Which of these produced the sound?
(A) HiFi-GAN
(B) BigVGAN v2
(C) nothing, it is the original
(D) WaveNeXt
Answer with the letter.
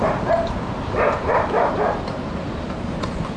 B